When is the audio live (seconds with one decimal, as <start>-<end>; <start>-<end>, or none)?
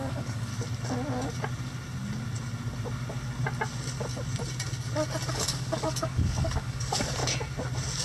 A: 0.5-5.3; 7.2-8.0